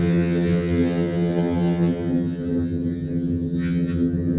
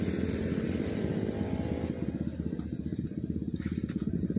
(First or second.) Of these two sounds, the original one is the second